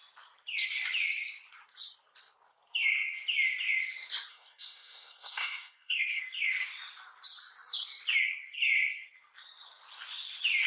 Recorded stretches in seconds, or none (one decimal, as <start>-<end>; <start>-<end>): 0.0-4.3; 6.2-10.7